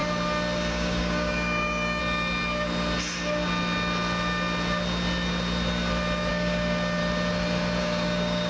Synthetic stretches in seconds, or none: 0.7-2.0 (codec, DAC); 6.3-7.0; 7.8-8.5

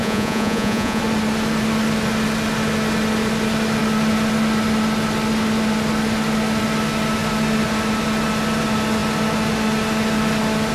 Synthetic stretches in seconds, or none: 0.0-1.0 (vocoder, Vocos)

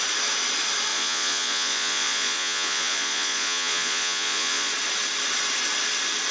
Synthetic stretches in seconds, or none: 0.9-4.7 (vocoder, Vocos)

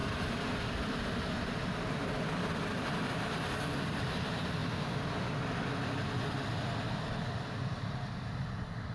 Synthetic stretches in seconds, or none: none

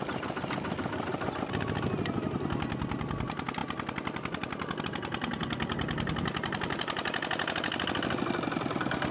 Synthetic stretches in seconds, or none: none